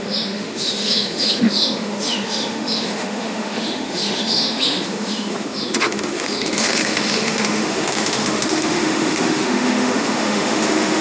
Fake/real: fake